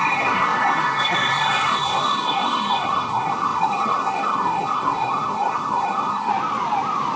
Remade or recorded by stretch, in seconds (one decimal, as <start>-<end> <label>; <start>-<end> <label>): 0.0-6.3 remade; 6.3-7.2 recorded